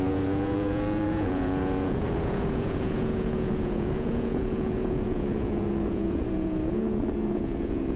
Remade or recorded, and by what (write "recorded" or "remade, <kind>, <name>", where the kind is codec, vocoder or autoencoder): remade, vocoder, Vocos